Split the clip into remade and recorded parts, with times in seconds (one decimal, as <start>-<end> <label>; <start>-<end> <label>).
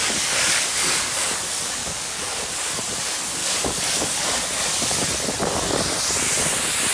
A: 0.0-2.8 remade; 2.8-3.4 recorded; 3.4-5.0 remade; 5.0-6.9 recorded